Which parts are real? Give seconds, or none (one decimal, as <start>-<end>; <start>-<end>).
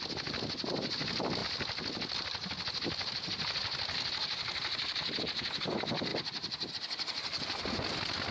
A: 0.0-6.1; 6.7-8.3